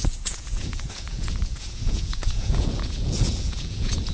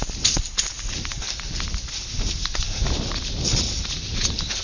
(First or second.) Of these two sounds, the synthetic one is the first